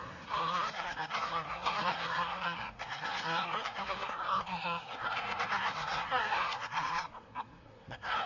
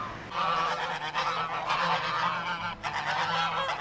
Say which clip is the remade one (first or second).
first